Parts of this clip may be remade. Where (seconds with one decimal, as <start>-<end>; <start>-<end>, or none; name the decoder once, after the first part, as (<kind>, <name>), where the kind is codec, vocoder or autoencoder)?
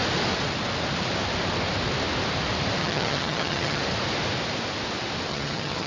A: 2.8-3.8 (vocoder, HiFi-GAN); 5.3-5.9